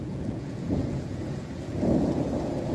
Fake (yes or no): yes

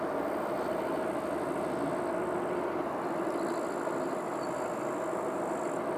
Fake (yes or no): no